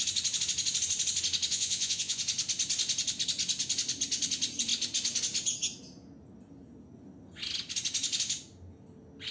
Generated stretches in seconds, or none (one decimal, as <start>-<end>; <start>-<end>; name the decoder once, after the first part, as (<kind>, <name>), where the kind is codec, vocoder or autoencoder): 1.5-2.2 (vocoder, Vocos)